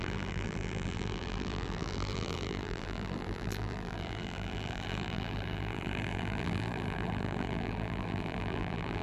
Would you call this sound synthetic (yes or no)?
yes